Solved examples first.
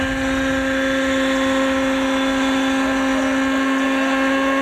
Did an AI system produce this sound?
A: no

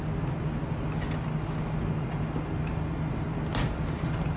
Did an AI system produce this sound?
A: no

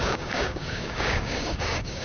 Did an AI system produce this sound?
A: yes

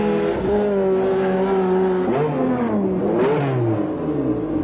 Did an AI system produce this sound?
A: no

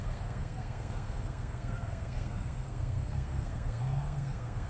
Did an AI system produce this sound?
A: yes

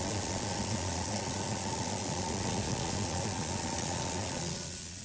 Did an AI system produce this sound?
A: yes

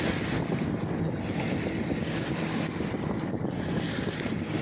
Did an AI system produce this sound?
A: no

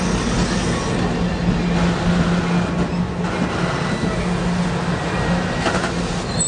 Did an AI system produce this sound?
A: no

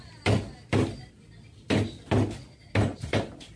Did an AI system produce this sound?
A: no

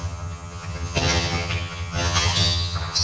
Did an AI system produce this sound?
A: yes